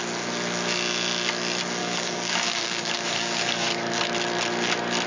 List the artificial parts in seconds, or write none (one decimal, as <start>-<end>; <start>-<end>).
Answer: 1.8-4.0